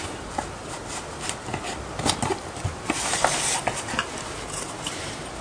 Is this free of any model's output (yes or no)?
yes